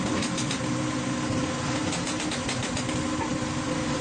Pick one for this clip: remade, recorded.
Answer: recorded